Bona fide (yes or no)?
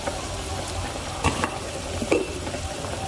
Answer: no